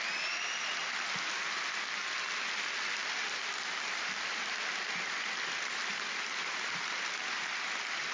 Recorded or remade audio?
recorded